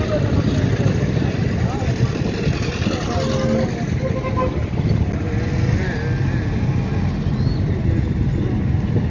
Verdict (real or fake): real